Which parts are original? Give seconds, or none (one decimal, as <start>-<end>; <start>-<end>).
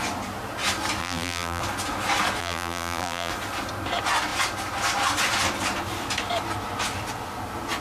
0.0-1.0; 1.6-2.4; 3.3-7.8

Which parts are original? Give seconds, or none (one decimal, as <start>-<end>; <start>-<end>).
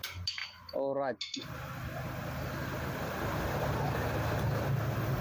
0.0-5.2